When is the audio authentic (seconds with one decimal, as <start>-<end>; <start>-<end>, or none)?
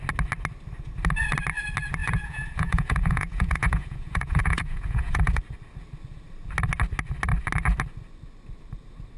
0.0-2.0; 5.4-9.2